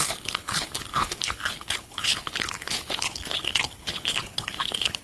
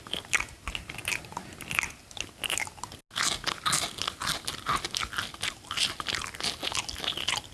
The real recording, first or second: second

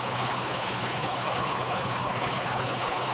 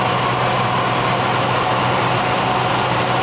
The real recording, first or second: second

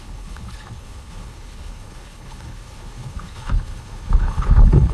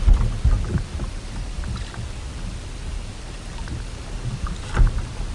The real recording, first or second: second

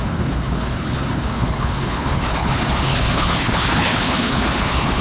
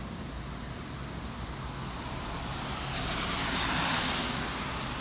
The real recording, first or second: second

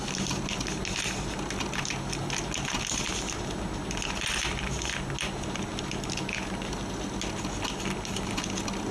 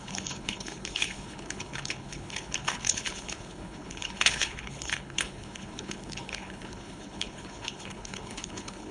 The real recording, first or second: first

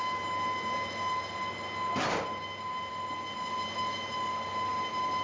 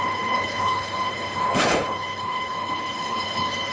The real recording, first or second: first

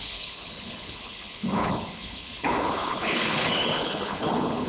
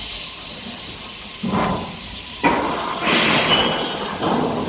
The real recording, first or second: second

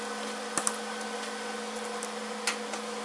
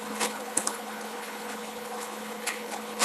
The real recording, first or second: first